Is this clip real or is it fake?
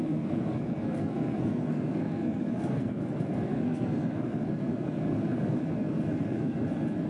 fake